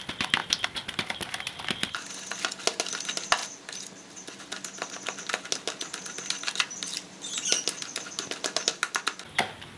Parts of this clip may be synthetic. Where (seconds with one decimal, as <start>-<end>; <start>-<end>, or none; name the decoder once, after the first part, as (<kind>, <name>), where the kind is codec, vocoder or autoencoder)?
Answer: 0.4-1.1 (vocoder, BigVGAN v2)